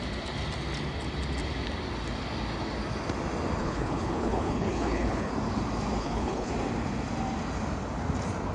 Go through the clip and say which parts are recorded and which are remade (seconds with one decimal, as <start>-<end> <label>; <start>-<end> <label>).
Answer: 0.0-3.6 recorded; 3.6-5.3 remade; 5.3-6.0 recorded; 6.0-6.5 remade; 6.5-8.5 recorded